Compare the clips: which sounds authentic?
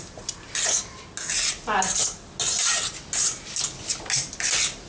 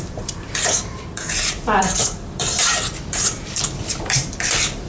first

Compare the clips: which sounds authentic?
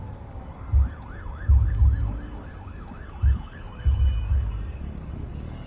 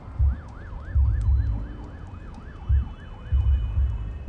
second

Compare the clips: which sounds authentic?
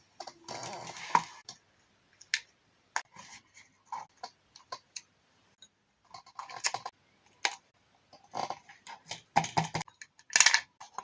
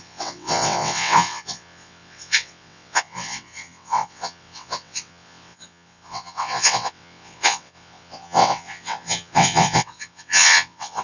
first